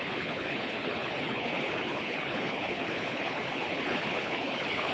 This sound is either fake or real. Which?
fake